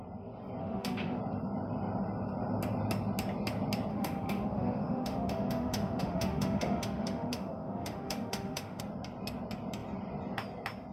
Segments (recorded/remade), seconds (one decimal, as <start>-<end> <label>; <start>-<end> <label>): 0.0-0.6 recorded; 0.6-1.2 remade; 1.2-3.9 recorded; 3.9-8.8 remade; 8.8-10.9 recorded